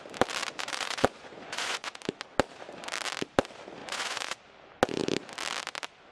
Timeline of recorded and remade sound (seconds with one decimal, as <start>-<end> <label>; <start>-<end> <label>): 0.0-0.5 recorded; 0.5-2.0 remade; 2.0-3.8 recorded; 3.8-4.4 remade; 4.4-6.1 recorded